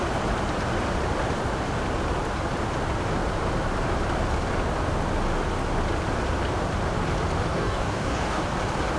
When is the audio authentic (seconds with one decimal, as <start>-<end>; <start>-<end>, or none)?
0.0-7.5; 8.4-9.0